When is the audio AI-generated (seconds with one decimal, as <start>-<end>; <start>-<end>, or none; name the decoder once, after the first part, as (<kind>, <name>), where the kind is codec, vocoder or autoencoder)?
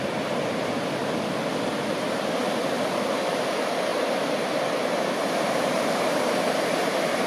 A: 0.0-1.0 (vocoder, BigVGAN v2); 1.7-2.4; 3.3-7.3